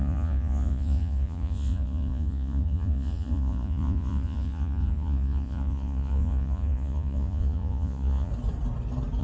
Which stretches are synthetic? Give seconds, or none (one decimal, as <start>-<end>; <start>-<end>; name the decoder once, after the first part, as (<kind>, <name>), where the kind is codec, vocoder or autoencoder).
0.0-8.3 (vocoder, Vocos)